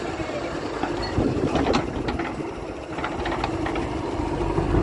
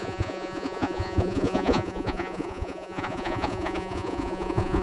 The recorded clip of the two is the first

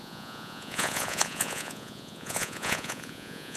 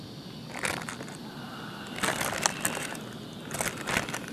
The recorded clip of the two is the second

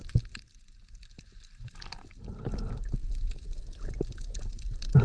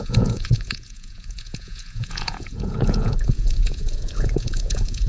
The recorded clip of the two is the first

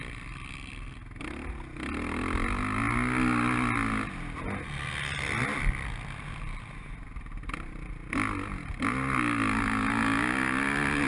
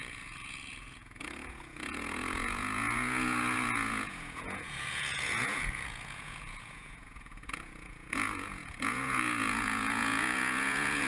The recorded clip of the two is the first